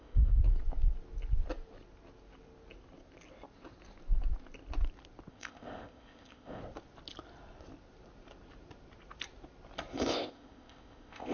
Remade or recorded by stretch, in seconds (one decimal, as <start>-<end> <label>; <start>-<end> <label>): 0.0-0.4 remade; 0.4-5.3 recorded; 5.3-6.6 remade; 6.6-10.1 recorded; 10.1-11.3 remade